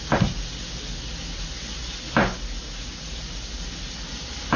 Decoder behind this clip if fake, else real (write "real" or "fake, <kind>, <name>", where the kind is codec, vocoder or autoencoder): real